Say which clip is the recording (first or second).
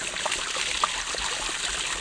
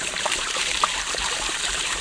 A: first